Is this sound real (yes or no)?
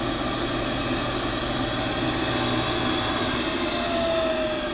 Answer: yes